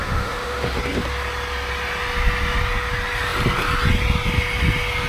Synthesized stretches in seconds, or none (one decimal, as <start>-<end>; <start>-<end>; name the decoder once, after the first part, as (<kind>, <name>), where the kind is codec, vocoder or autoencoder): 0.0-0.8 (autoencoder, DAC-VAE)